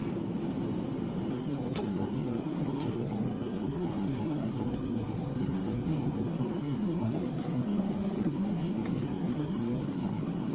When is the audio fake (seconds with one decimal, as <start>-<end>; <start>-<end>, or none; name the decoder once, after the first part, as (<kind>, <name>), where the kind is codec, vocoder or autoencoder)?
1.3-10.5 (codec, SNAC)